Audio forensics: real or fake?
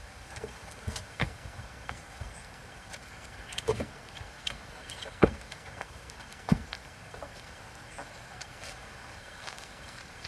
fake